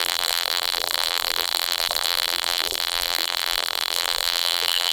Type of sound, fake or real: fake